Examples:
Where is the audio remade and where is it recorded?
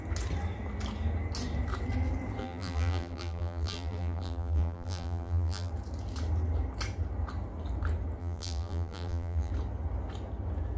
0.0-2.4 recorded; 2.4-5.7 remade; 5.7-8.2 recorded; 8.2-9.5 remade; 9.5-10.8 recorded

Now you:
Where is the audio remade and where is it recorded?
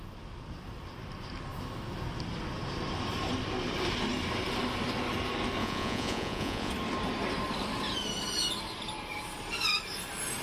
0.0-5.6 recorded; 5.6-6.7 remade; 6.7-10.4 recorded